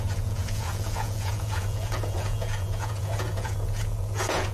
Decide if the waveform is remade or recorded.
remade